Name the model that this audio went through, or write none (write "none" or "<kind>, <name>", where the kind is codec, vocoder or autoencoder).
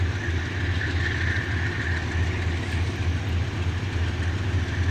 none